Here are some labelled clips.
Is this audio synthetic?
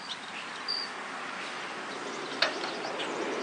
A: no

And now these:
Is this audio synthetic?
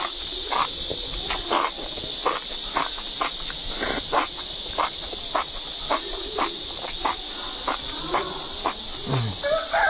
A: no